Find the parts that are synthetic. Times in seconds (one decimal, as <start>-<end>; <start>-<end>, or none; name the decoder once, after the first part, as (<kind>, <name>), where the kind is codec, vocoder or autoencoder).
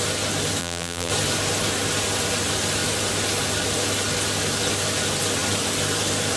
0.6-1.1 (vocoder, BigVGAN v2)